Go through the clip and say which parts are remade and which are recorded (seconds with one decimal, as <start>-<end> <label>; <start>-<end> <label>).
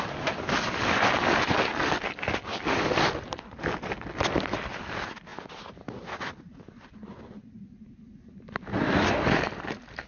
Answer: 0.0-10.1 recorded